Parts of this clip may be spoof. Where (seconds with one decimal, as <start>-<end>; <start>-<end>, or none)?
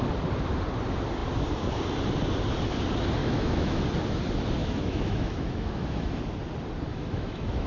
3.2-3.8; 4.6-6.2; 6.9-7.7